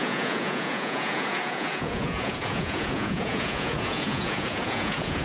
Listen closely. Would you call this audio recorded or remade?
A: remade